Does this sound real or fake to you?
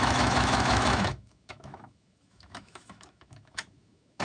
fake